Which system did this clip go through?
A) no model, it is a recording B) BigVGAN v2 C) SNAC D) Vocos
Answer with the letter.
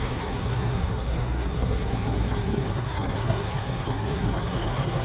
C